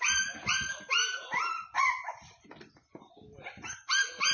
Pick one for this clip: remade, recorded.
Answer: recorded